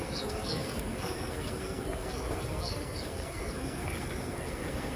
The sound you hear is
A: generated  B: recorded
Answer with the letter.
A